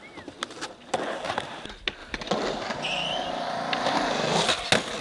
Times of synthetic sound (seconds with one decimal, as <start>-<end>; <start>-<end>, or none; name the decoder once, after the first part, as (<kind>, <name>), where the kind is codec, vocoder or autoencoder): none